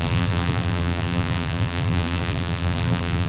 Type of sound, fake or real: fake